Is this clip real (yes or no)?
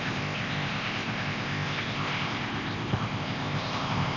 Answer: no